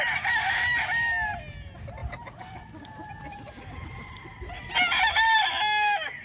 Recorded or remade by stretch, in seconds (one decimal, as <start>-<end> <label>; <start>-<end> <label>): 0.0-6.2 recorded